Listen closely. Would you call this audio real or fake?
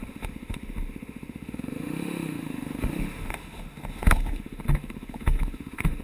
fake